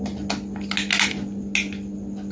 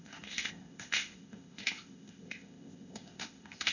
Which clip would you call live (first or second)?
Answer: first